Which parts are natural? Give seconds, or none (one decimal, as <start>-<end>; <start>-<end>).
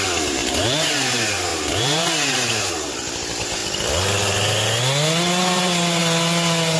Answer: 3.6-5.4; 6.0-6.8